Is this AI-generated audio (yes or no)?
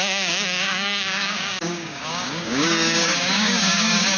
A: yes